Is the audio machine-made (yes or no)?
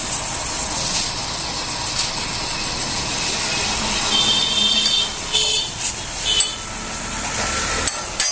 no